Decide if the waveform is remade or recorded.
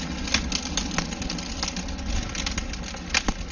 recorded